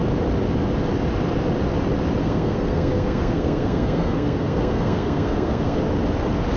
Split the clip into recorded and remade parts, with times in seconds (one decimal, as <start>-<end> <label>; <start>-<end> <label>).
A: 0.0-2.2 recorded; 2.2-5.8 remade; 5.8-6.6 recorded